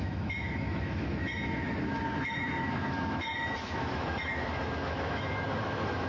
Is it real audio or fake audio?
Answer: fake